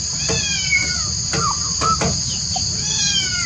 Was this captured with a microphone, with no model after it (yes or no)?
yes